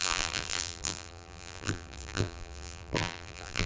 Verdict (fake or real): fake